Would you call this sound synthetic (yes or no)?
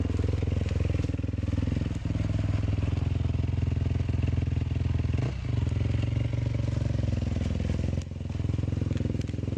no